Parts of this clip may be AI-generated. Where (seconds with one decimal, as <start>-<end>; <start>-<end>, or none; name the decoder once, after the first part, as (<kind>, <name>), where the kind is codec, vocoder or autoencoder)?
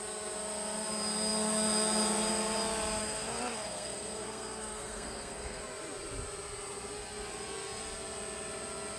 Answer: 3.0-5.6 (codec, SNAC)